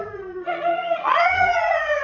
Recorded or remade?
remade